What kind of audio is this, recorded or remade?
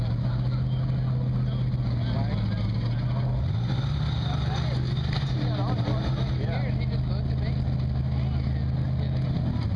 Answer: recorded